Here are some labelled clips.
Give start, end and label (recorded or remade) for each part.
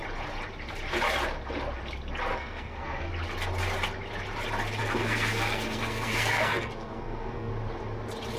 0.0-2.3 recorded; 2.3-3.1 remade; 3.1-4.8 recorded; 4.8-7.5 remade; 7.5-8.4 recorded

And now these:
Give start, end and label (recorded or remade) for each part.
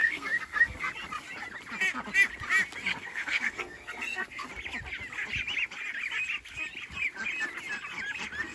0.0-0.9 remade; 0.9-2.9 recorded; 2.9-4.5 remade; 4.5-8.5 recorded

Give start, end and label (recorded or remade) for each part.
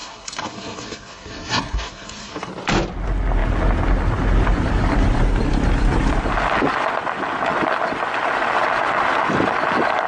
0.0-2.5 remade; 2.5-10.1 recorded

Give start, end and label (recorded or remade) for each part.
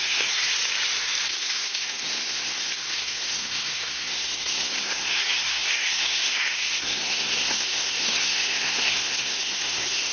0.0-0.5 remade; 0.5-1.2 recorded; 1.2-10.1 remade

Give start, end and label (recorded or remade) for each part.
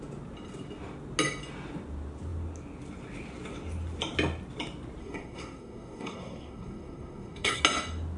0.0-5.0 recorded; 5.0-7.6 remade; 7.6-8.2 recorded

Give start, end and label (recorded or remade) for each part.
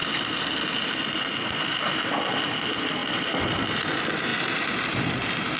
0.0-5.6 recorded